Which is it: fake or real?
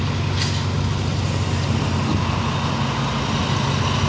real